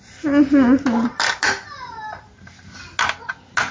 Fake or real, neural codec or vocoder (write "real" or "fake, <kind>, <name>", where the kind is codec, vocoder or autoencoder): real